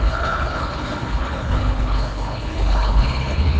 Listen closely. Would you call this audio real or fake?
fake